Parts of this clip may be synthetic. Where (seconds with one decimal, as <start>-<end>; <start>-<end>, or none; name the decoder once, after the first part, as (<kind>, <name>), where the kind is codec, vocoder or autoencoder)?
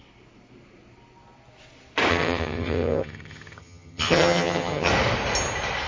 2.1-4.9 (vocoder, HiFi-GAN)